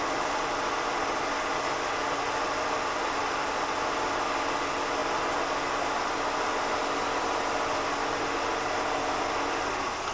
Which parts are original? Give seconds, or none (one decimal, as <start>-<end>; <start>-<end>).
0.0-10.1